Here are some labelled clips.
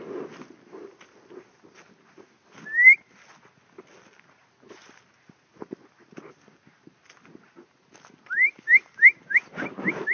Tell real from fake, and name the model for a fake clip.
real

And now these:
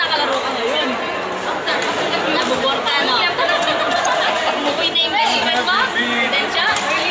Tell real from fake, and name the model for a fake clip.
real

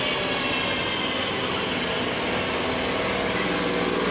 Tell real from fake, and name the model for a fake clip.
real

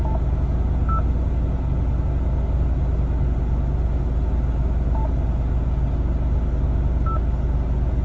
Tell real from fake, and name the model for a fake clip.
real